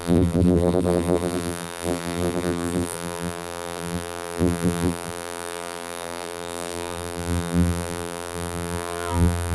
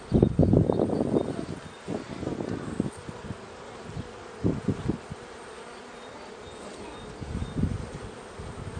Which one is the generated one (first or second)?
first